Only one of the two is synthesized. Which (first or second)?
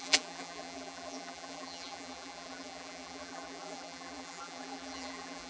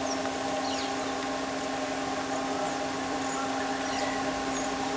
first